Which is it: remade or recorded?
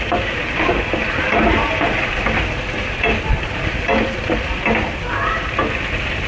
remade